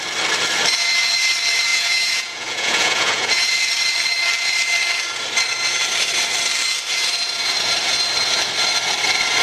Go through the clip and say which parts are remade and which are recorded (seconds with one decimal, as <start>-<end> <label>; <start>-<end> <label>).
0.0-1.7 recorded; 1.7-3.5 remade; 3.5-9.4 recorded